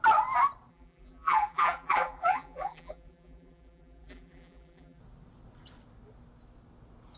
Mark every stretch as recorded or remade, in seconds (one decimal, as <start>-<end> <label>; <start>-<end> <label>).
0.0-0.7 recorded; 0.7-5.0 remade; 5.0-7.2 recorded